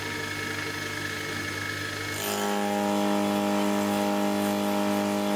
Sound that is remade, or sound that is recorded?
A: recorded